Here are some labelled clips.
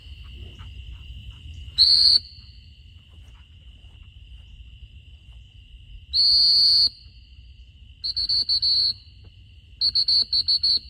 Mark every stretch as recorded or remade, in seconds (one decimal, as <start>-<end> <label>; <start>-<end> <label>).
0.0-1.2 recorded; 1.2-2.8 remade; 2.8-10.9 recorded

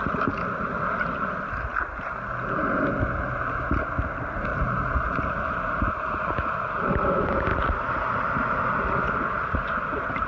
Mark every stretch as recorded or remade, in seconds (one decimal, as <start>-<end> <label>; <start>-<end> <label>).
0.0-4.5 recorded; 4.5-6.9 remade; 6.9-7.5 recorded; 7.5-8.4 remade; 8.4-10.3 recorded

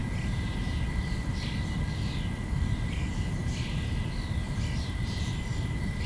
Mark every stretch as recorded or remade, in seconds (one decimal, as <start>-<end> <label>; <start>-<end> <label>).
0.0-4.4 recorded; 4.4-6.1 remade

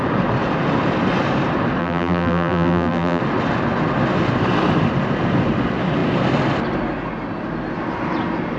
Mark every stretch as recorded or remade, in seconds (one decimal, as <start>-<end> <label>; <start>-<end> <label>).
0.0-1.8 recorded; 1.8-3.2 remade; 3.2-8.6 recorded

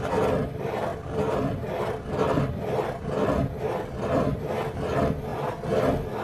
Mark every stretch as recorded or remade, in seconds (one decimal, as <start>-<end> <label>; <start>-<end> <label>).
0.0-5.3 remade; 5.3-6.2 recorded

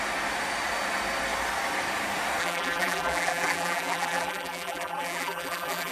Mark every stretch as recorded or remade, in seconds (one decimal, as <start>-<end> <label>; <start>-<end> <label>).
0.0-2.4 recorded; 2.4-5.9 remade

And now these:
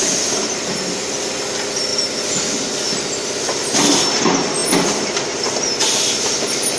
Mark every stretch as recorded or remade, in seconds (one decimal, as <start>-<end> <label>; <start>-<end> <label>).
0.0-6.8 recorded